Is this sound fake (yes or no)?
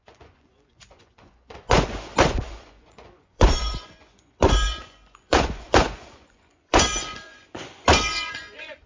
yes